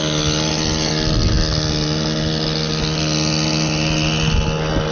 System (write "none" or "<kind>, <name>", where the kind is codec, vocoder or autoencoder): none